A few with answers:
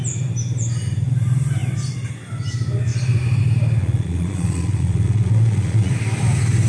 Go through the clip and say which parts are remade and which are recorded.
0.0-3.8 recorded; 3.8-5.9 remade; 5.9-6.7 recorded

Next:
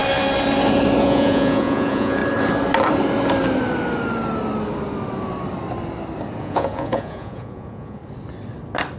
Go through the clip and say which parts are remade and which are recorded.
0.0-1.0 recorded; 1.0-2.2 remade; 2.2-6.4 recorded; 6.4-8.0 remade; 8.0-9.0 recorded

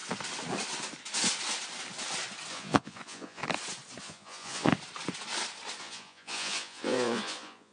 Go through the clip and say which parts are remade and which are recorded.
0.0-2.5 recorded; 2.5-3.4 remade; 3.4-4.0 recorded; 4.0-4.7 remade; 4.7-5.8 recorded; 5.8-7.7 remade

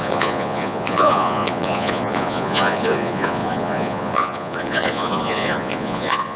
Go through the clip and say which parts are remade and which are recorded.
0.0-6.4 remade

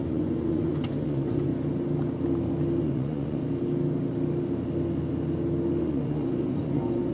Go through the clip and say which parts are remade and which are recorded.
0.0-1.5 remade; 1.5-2.8 recorded; 2.8-3.4 remade; 3.4-5.8 recorded; 5.8-7.1 remade

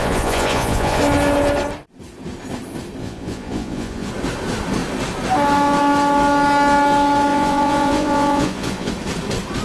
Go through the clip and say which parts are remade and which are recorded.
0.0-1.0 remade; 1.0-3.0 recorded; 3.0-4.1 remade; 4.1-7.3 recorded; 7.3-8.9 remade; 8.9-9.6 recorded

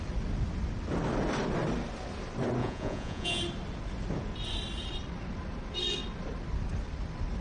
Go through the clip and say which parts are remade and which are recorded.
0.0-2.6 recorded; 2.6-3.4 remade; 3.4-7.4 recorded

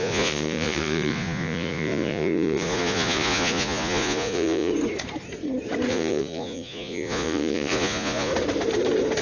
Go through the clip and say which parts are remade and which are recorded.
0.0-4.7 remade; 4.7-5.9 recorded; 5.9-8.3 remade; 8.3-9.2 recorded